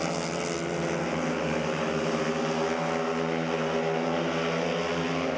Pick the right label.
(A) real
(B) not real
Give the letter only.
A